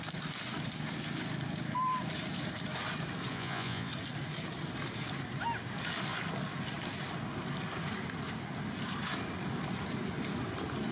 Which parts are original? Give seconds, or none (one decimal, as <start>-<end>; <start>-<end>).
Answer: 0.0-3.3; 3.9-10.9